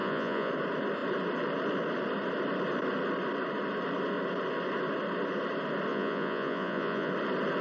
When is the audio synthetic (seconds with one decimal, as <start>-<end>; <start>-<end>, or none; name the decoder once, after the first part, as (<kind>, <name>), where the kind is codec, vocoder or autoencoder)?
0.0-0.5 (vocoder, Vocos); 5.9-7.1